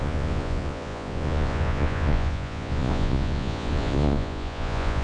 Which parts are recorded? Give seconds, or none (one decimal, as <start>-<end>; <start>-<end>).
none